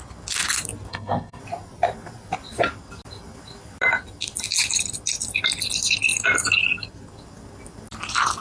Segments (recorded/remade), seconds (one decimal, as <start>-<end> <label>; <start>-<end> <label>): 0.0-0.9 recorded; 0.9-1.4 remade; 1.4-8.4 recorded